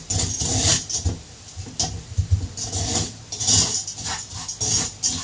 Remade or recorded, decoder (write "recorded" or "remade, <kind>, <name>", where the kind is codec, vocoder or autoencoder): recorded